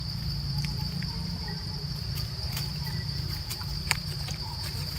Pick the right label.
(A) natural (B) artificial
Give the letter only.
B